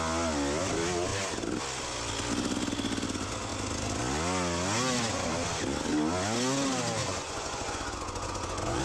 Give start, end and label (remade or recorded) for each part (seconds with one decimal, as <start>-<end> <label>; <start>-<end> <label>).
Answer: 0.0-7.0 recorded; 7.0-8.8 remade

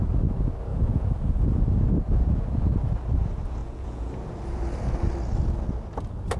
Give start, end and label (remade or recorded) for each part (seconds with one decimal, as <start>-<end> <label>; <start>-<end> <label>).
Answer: 0.0-0.7 recorded; 0.7-1.6 remade; 1.6-3.6 recorded; 3.6-4.1 remade; 4.1-6.4 recorded

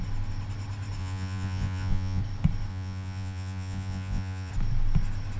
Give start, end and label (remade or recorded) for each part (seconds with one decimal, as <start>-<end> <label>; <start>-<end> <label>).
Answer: 0.0-1.0 recorded; 1.0-2.2 remade; 2.2-2.7 recorded; 2.7-4.5 remade; 4.5-5.4 recorded

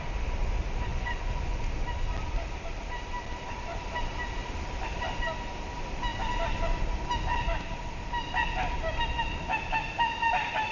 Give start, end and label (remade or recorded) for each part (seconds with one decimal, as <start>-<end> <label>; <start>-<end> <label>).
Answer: 0.0-0.9 recorded; 0.9-1.6 remade; 1.6-10.7 recorded

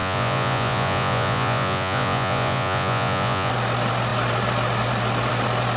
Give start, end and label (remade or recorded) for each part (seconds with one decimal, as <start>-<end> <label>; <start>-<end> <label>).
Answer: 0.0-3.5 remade; 3.5-5.8 recorded

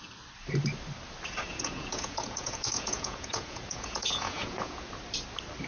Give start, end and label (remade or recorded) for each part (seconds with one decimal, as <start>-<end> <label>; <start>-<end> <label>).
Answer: 0.0-1.5 recorded; 1.5-4.9 remade; 4.9-5.7 recorded

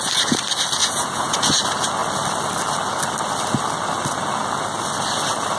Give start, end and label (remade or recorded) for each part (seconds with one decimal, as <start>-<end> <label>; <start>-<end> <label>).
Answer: 0.0-0.8 recorded; 0.8-1.5 remade; 1.5-5.6 recorded

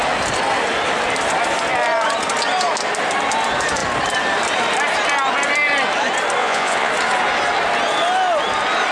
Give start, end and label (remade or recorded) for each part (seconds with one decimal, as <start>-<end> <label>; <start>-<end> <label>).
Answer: 0.0-6.4 recorded; 6.4-6.9 remade; 6.9-8.9 recorded